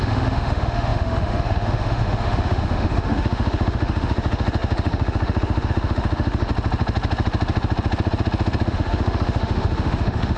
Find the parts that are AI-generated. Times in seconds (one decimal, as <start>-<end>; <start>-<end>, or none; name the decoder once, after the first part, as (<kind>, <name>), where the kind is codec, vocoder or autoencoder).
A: 0.0-6.5 (autoencoder, DAC-VAE); 8.7-10.4